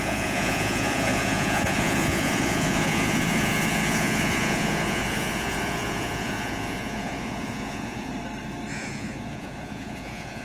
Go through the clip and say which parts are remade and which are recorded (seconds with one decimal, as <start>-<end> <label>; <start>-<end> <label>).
0.0-8.1 remade; 8.1-8.7 recorded; 8.7-10.4 remade

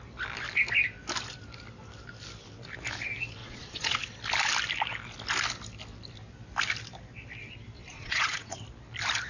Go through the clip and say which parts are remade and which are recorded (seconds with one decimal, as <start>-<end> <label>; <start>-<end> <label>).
0.0-3.4 recorded; 3.4-4.0 remade; 4.0-7.9 recorded; 7.9-8.6 remade; 8.6-9.3 recorded

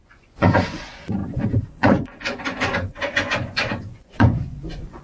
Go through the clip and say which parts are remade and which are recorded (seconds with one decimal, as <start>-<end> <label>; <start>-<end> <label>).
0.0-5.0 remade

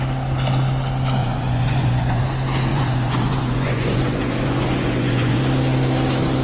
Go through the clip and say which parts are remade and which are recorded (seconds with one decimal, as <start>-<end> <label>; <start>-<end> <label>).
0.0-1.2 recorded; 1.2-2.2 remade; 2.2-2.7 recorded; 2.7-5.4 remade; 5.4-6.4 recorded

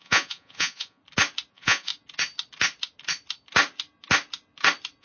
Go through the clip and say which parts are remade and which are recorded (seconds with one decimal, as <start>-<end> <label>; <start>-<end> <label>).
0.0-1.0 remade; 1.0-1.5 recorded; 1.5-1.9 remade; 1.9-5.0 recorded

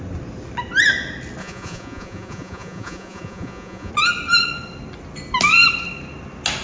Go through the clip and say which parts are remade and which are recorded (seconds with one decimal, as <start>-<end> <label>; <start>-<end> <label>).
0.0-1.4 recorded; 1.4-3.9 remade; 3.9-6.6 recorded